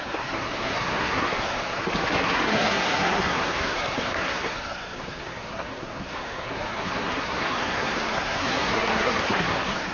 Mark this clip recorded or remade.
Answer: remade